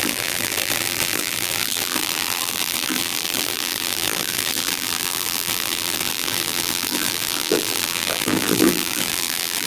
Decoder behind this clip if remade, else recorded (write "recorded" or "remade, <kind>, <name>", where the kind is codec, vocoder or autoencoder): remade, vocoder, BigVGAN v2